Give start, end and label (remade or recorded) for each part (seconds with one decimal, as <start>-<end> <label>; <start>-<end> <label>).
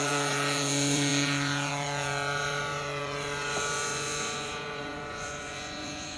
0.0-6.2 remade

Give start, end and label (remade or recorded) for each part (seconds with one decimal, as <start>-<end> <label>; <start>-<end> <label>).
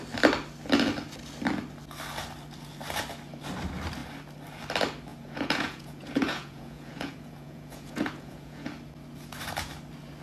0.0-5.1 recorded; 5.1-8.7 remade; 8.7-10.2 recorded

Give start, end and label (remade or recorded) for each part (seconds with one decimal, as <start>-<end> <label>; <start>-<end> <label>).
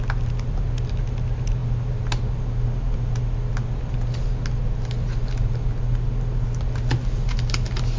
0.0-8.0 recorded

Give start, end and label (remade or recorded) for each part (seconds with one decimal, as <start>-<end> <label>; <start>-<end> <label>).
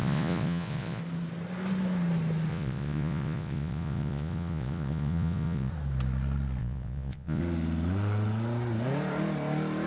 0.0-1.0 remade; 1.0-2.5 recorded; 2.5-5.7 remade; 5.7-6.6 recorded; 6.6-7.4 remade; 7.4-9.9 recorded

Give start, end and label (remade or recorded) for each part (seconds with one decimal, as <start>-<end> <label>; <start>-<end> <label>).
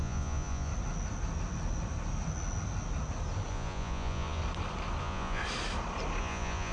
0.0-0.7 remade; 0.7-3.5 recorded; 3.5-4.4 remade; 4.4-5.0 recorded; 5.0-5.4 remade; 5.4-6.2 recorded; 6.2-6.7 remade